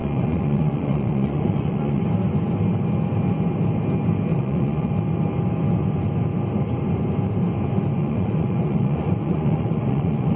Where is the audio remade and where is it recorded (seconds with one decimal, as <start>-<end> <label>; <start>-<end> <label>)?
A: 0.0-2.0 remade; 2.0-4.3 recorded; 4.3-4.9 remade; 4.9-8.0 recorded; 8.0-10.4 remade